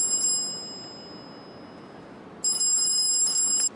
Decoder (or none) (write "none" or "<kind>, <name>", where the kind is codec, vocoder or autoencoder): none